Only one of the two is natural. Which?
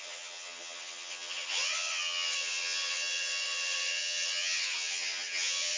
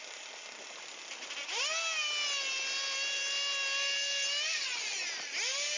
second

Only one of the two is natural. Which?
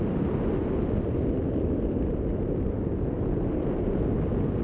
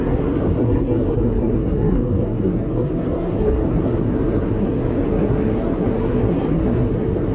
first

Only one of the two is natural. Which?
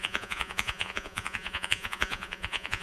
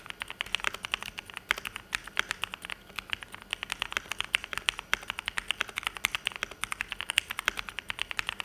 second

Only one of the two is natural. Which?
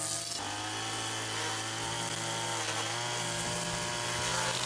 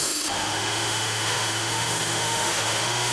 first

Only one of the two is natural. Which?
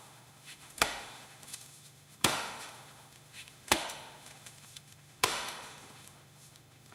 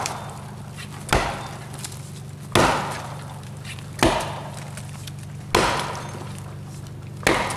second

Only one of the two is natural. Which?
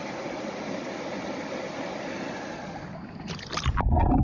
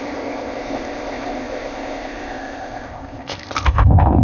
first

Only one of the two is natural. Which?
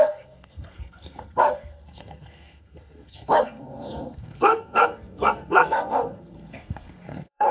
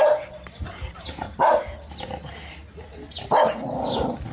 second